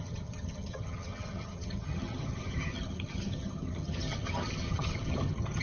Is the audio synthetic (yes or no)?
yes